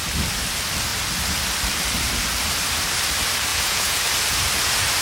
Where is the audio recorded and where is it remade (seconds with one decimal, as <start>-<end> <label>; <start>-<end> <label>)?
0.0-3.5 recorded; 3.5-4.0 remade; 4.0-5.0 recorded

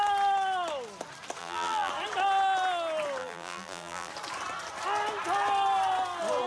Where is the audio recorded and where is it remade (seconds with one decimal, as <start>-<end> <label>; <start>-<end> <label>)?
0.0-1.4 recorded; 1.4-1.9 remade; 1.9-3.2 recorded; 3.2-4.1 remade; 4.1-6.5 recorded

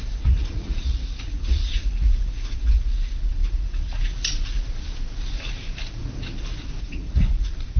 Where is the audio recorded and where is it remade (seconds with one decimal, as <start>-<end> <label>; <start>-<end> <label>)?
0.0-4.0 remade; 4.0-6.8 recorded; 6.8-7.8 remade

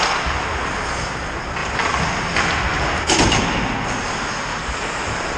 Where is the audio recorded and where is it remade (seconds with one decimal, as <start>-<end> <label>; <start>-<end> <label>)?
0.0-4.5 recorded; 4.5-5.4 remade

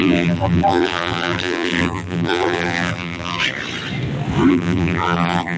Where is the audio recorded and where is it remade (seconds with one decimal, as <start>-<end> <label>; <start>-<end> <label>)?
0.0-3.4 remade; 3.4-4.5 recorded; 4.5-5.6 remade

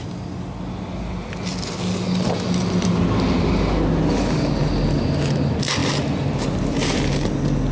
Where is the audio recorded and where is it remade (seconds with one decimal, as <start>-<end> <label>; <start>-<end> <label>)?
0.0-7.7 recorded

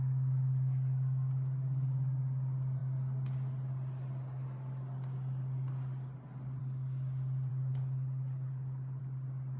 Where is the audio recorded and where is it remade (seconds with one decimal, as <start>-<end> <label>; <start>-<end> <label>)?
0.0-7.5 recorded; 7.5-9.0 remade; 9.0-9.6 recorded